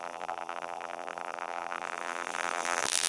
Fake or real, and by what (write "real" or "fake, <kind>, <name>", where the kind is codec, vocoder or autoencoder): fake, vocoder, BigVGAN v2